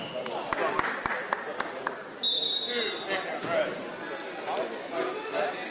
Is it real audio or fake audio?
real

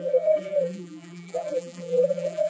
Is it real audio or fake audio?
fake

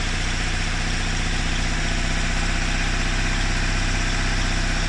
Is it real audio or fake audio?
fake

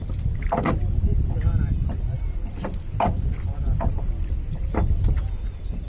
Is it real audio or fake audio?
real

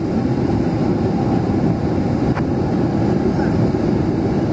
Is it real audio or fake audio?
fake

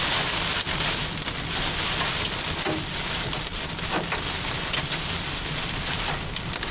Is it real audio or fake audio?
real